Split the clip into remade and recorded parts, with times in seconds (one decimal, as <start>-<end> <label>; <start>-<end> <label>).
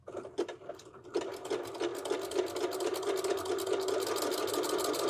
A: 0.0-5.1 recorded